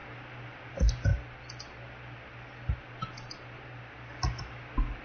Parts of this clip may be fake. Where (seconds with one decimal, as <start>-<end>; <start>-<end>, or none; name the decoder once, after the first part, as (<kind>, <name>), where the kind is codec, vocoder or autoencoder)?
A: none